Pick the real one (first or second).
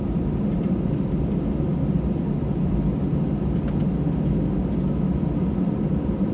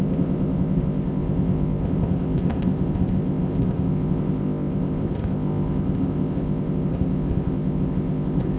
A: first